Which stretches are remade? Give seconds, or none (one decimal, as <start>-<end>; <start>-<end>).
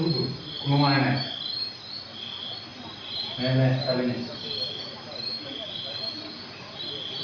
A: none